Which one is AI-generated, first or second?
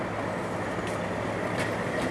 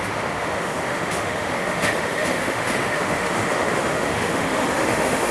second